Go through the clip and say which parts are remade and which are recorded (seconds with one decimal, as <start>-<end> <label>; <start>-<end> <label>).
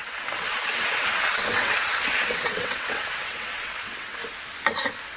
0.0-4.2 remade; 4.2-5.2 recorded